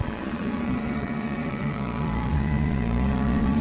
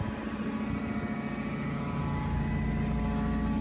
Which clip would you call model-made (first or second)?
first